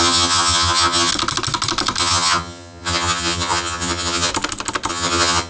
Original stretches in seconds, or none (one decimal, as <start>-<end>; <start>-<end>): 1.1-2.0; 4.3-4.9

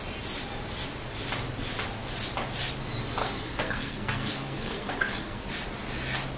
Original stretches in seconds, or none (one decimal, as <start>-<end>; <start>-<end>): 0.0-3.2; 5.5-6.4

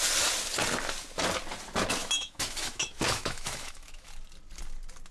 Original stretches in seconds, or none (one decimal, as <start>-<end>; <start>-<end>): 0.0-2.0; 4.1-5.1

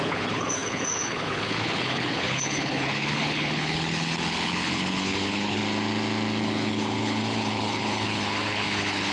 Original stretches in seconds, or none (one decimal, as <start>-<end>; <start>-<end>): 5.6-6.4

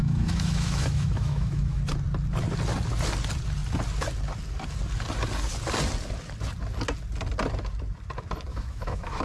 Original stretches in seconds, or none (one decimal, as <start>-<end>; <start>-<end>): 1.8-8.5